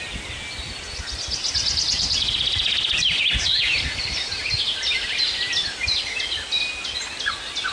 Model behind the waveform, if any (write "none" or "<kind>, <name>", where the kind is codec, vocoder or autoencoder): none